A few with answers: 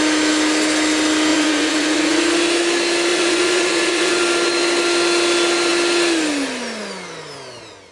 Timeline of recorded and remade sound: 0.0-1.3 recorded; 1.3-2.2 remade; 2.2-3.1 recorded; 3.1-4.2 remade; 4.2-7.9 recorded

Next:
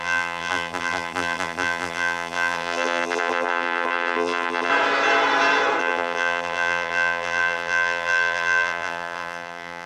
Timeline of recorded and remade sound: 0.0-4.7 remade; 4.7-5.8 recorded; 5.8-9.9 remade

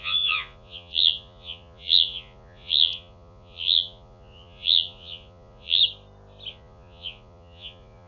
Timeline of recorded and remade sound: 0.0-5.8 remade; 5.8-6.5 recorded; 6.5-8.1 remade

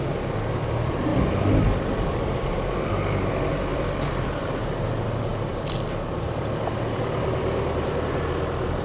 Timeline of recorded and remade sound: 0.0-3.7 recorded; 3.7-4.6 remade; 4.6-8.8 recorded

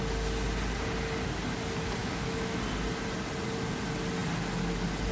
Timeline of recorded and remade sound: 0.0-2.0 recorded; 2.0-2.6 remade; 2.6-5.1 recorded

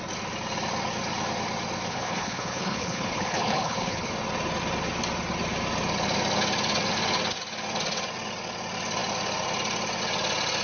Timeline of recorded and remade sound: 0.0-1.9 recorded; 1.9-4.1 remade; 4.1-10.6 recorded